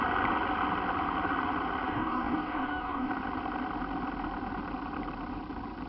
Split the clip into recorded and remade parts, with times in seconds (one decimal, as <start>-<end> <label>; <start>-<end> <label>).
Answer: 0.0-1.9 recorded; 1.9-3.1 remade; 3.1-5.9 recorded